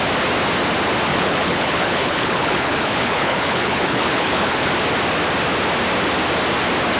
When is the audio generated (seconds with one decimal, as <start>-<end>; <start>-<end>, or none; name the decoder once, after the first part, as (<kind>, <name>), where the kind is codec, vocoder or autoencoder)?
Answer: 1.1-4.7 (codec, HILCodec)